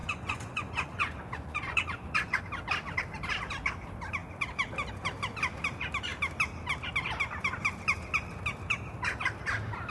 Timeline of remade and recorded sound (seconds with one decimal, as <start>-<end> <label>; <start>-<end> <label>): 0.0-2.4 remade; 2.4-9.9 recorded